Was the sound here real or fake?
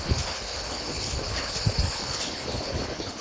fake